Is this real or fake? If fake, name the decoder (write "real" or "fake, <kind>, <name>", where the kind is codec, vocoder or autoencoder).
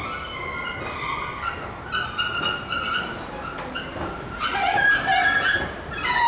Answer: real